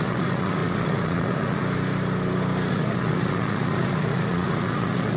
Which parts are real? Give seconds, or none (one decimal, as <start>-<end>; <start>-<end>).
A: 1.6-2.7